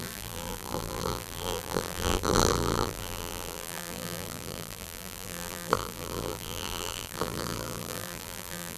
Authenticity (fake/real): fake